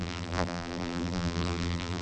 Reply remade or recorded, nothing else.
remade